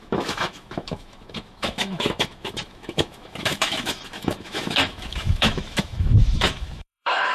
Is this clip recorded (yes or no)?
no